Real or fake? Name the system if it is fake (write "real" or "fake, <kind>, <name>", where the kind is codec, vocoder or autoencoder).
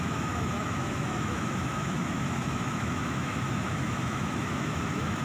fake, autoencoder, DAC-VAE